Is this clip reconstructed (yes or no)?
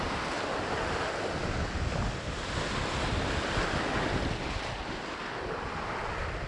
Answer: no